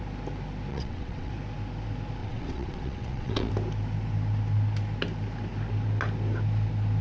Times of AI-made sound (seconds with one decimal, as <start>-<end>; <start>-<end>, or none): 0.7-1.3; 2.2-3.5